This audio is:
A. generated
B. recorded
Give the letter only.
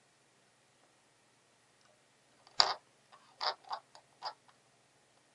B